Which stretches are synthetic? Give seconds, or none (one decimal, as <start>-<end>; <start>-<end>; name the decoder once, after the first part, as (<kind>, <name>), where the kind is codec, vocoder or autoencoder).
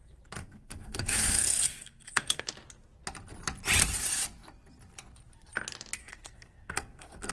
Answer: 0.4-2.4 (codec, SNAC); 6.0-7.3